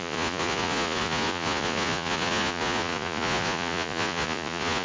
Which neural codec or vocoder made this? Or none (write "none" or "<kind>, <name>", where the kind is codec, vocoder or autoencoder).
vocoder, Vocos